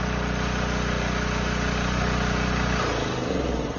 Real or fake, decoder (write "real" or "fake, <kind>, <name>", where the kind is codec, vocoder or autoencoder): real